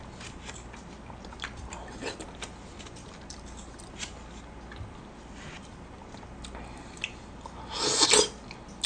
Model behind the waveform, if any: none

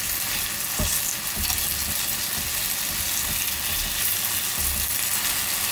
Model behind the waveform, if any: none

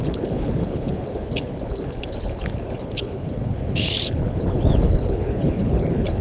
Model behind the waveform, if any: codec, HILCodec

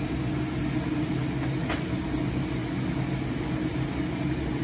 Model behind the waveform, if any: none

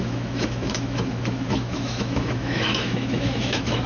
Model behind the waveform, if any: autoencoder, DAC-VAE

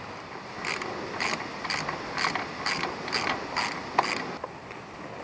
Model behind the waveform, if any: none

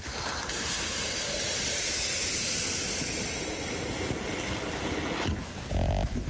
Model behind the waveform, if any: none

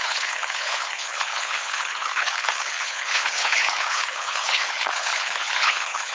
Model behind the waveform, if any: codec, HILCodec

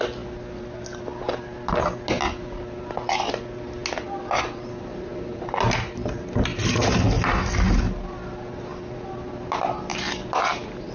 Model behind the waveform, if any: none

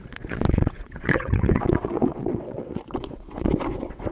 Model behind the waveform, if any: vocoder, WaveNeXt